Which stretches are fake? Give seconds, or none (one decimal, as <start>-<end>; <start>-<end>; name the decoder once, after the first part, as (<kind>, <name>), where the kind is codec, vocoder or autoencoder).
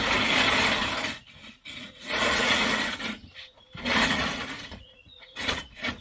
1.5-3.2 (vocoder, Vocos); 4.1-6.0